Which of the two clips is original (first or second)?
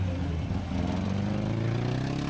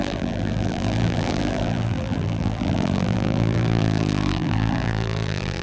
first